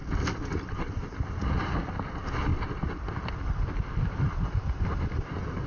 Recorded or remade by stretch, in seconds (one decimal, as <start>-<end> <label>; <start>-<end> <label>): 0.0-5.7 recorded